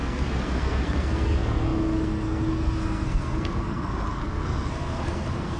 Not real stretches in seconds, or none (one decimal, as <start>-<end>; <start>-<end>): 0.0-5.6